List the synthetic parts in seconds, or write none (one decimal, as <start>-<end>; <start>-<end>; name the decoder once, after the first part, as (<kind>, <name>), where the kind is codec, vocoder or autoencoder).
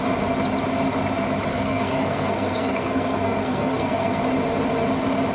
1.5-4.2 (codec, SNAC)